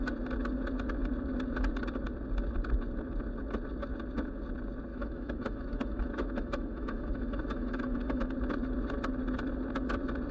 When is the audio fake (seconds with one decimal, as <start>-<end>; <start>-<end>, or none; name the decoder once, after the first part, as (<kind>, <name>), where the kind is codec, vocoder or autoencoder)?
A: 4.9-8.3 (autoencoder, DAC-VAE)